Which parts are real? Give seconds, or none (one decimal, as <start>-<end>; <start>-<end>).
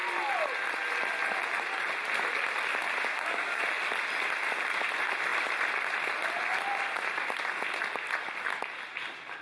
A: 0.0-3.1; 3.6-9.4